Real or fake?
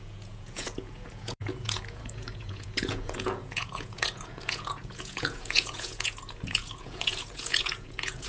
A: fake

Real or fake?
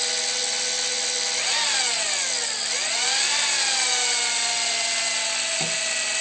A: real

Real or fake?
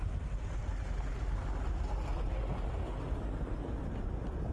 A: real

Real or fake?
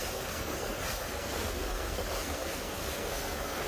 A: fake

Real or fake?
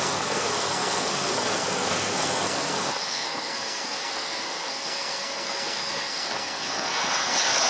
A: fake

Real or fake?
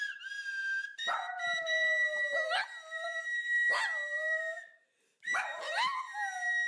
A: real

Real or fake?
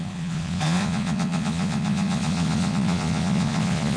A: fake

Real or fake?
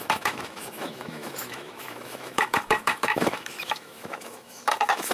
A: fake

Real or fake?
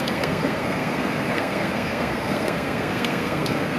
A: fake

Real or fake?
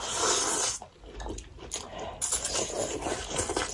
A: real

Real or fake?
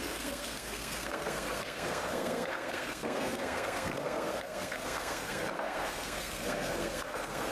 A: fake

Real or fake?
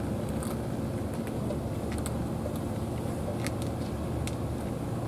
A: real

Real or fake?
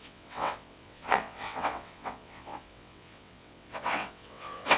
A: fake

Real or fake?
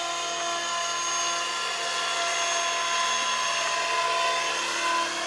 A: real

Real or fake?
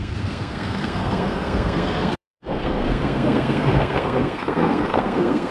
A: fake